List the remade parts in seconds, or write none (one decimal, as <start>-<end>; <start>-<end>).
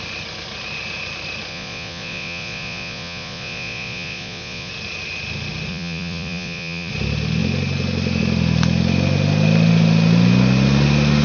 1.5-4.7; 5.7-6.9